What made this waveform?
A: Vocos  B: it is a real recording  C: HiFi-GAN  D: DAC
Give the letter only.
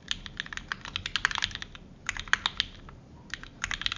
B